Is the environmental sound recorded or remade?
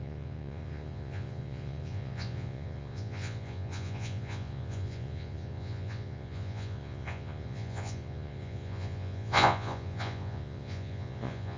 remade